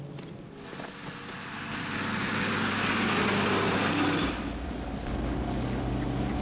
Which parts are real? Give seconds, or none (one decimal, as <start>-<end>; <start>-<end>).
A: 0.0-6.4